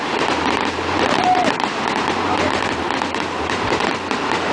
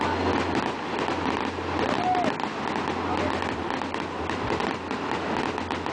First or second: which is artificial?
first